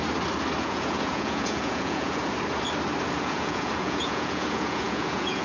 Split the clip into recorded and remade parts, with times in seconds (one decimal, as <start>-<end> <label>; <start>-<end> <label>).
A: 0.0-0.6 recorded; 0.6-2.2 remade; 2.2-3.2 recorded; 3.2-5.4 remade

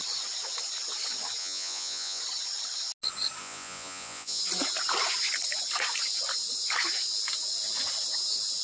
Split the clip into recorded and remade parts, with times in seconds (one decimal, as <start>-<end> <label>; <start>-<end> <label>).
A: 0.0-1.4 recorded; 1.4-2.2 remade; 2.2-3.4 recorded; 3.4-4.4 remade; 4.4-8.6 recorded

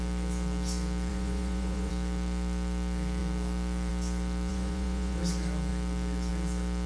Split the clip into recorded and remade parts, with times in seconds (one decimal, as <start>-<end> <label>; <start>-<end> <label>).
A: 0.0-1.1 recorded; 1.1-1.9 remade; 1.9-4.5 recorded; 4.5-5.2 remade; 5.2-6.9 recorded

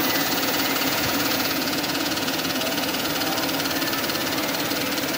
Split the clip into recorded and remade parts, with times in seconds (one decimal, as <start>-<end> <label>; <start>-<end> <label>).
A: 0.0-3.1 remade; 3.1-5.2 recorded

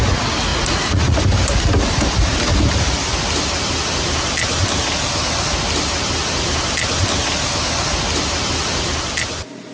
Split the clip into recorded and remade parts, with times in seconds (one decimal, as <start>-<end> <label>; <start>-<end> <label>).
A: 0.0-0.5 recorded; 0.5-1.2 remade; 1.2-9.7 recorded

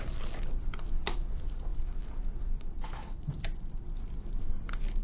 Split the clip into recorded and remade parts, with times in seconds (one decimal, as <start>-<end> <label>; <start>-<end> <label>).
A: 0.0-5.0 recorded

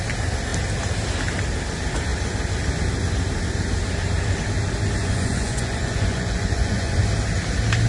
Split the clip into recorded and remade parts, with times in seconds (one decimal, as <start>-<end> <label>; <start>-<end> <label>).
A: 0.0-5.0 recorded; 5.0-7.0 remade; 7.0-7.9 recorded

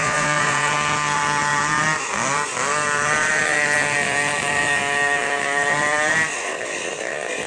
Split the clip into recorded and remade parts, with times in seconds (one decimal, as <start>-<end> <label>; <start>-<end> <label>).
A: 0.0-0.7 remade; 0.7-7.5 recorded